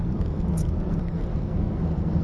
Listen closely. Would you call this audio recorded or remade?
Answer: remade